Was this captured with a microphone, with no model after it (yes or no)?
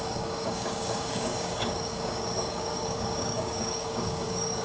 no